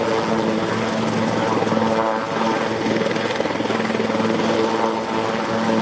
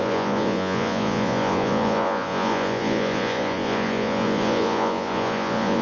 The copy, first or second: second